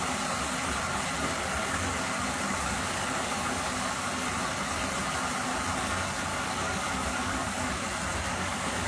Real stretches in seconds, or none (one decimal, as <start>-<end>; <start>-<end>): 0.0-2.5; 4.1-6.3; 7.7-8.3